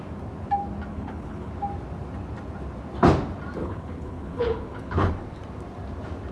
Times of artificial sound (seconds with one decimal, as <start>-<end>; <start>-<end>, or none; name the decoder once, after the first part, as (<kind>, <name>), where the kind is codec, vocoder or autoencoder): 0.9-1.5 (codec, HILCodec); 3.6-5.1